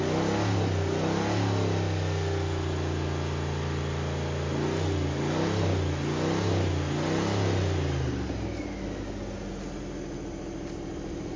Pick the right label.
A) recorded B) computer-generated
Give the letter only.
A